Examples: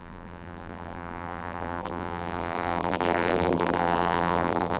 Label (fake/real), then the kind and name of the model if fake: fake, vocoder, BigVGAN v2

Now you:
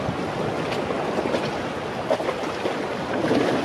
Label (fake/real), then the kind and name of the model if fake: real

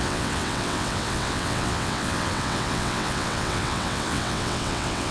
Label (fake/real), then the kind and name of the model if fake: fake, vocoder, WaveNeXt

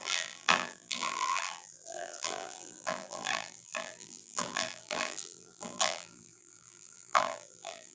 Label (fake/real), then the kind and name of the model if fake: fake, vocoder, BigVGAN v2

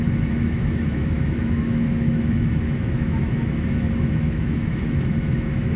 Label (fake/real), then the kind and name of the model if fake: fake, autoencoder, DAC-VAE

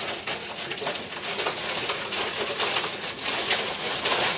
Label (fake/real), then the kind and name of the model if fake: fake, vocoder, Vocos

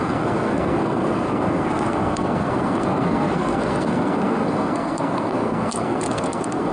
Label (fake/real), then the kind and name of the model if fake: fake, codec, SNAC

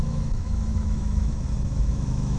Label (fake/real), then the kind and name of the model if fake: fake, autoencoder, DAC-VAE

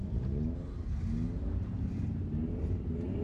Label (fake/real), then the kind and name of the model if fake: real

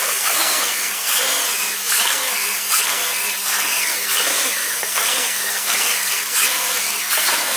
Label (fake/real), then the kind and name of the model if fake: fake, codec, SNAC